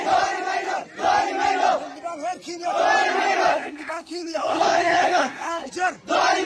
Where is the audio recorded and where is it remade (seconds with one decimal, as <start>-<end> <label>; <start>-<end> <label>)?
0.0-3.5 recorded; 3.5-5.7 remade; 5.7-6.4 recorded